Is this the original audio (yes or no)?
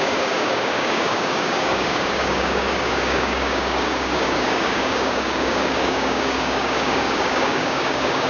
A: no